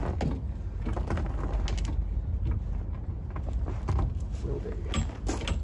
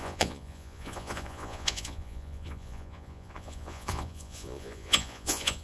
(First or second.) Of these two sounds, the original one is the first